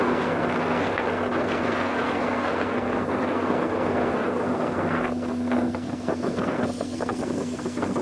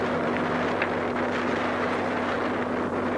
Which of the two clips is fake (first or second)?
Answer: first